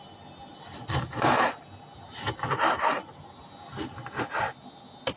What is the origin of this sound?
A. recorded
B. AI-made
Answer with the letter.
A